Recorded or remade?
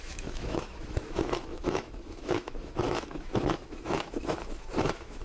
remade